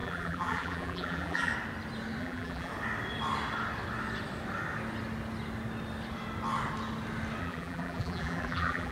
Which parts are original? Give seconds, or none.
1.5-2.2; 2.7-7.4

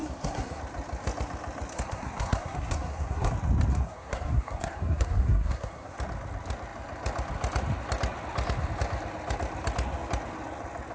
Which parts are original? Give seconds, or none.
0.6-1.7; 3.3-3.7; 6.0-10.9